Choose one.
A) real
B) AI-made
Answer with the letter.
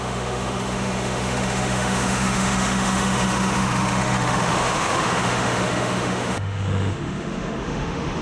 B